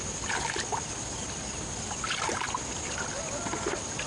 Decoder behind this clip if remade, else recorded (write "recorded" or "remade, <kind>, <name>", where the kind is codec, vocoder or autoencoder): recorded